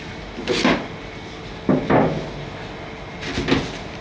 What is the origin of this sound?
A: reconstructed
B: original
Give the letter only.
B